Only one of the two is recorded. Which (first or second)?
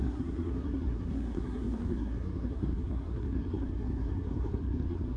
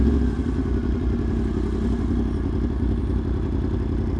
second